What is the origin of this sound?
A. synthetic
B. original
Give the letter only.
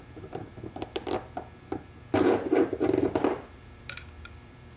A